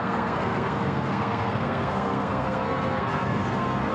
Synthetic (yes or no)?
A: yes